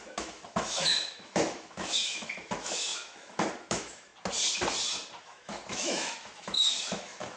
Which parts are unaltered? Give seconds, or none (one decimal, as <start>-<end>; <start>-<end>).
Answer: 4.1-5.2